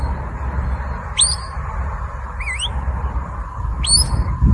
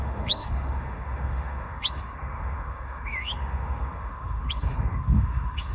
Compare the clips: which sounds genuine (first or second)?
first